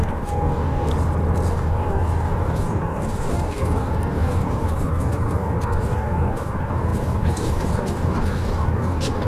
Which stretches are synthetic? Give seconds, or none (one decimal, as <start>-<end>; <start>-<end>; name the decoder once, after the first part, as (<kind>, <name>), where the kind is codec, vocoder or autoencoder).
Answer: 0.0-0.9 (codec, DAC); 1.5-9.3